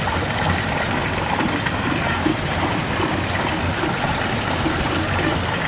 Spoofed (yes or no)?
no